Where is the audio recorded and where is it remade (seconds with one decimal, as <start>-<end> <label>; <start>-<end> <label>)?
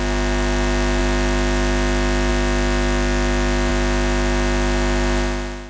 0.0-5.7 recorded